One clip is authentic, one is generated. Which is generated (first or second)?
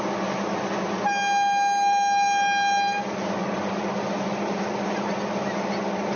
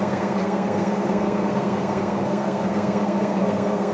second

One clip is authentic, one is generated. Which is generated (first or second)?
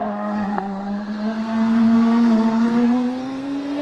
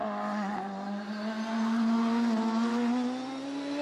first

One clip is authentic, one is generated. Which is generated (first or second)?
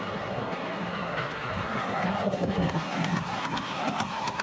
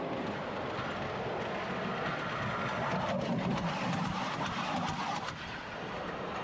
first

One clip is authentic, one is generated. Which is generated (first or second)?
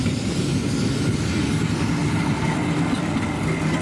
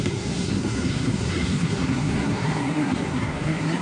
second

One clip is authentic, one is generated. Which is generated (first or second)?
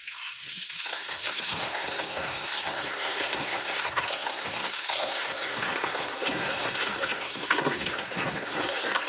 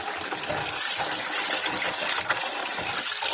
first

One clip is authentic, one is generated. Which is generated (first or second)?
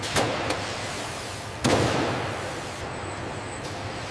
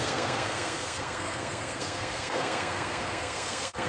second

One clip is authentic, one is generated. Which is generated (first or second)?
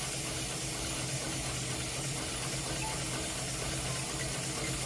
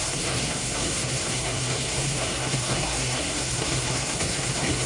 second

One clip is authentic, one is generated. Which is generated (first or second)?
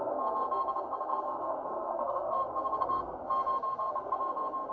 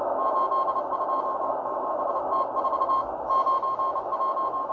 first